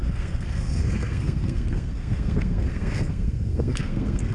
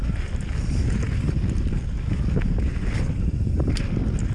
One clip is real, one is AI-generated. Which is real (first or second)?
second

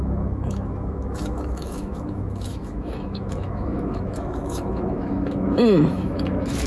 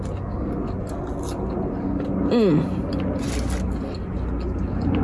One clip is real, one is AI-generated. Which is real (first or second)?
second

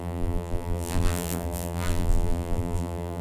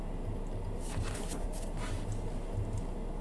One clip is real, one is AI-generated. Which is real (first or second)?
second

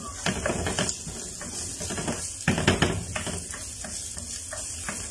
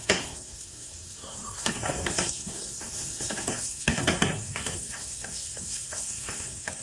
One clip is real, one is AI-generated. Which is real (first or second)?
first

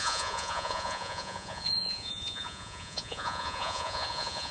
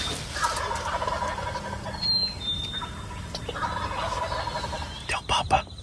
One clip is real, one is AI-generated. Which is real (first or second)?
second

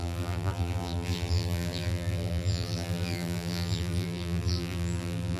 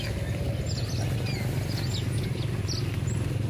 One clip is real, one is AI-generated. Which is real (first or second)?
second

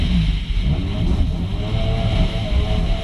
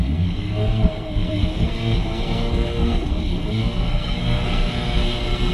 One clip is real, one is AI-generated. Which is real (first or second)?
first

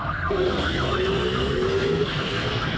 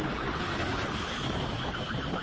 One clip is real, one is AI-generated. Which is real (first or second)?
second